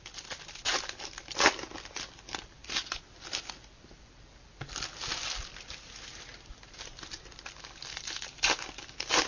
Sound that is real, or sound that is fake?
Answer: real